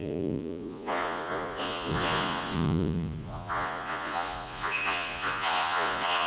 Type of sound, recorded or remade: remade